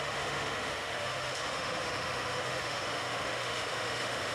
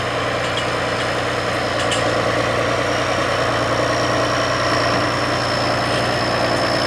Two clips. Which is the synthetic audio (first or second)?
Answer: first